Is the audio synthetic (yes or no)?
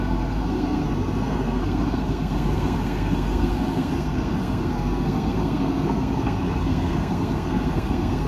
yes